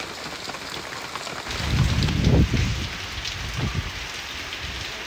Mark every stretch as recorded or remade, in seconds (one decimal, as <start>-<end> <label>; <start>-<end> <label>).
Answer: 0.0-5.1 recorded